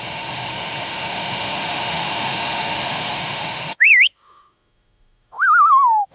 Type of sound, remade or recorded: remade